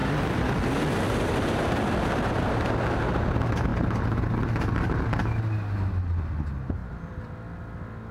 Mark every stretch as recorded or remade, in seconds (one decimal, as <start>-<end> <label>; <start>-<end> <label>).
0.0-2.5 remade; 2.5-6.8 recorded; 6.8-8.1 remade